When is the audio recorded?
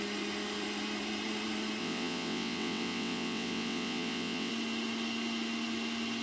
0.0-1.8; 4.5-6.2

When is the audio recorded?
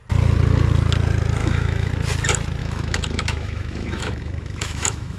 0.0-1.4; 1.9-2.6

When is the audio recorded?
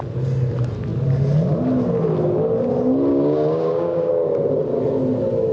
0.0-3.1; 4.1-5.5